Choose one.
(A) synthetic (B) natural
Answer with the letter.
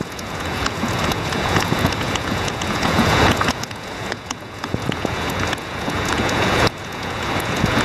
A